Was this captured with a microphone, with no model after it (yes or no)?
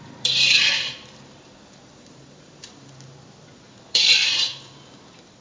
no